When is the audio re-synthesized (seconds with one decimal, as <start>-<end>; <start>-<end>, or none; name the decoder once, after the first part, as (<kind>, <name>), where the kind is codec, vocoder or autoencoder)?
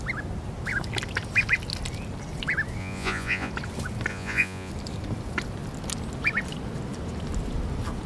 2.8-3.5 (vocoder, Vocos); 4.1-4.7